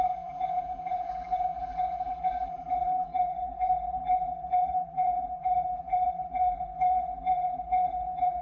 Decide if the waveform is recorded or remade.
remade